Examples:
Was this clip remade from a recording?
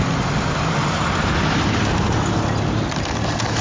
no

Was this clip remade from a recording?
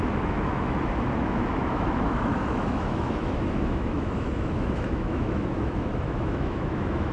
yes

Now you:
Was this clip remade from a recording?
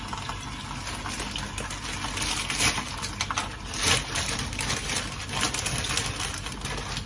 no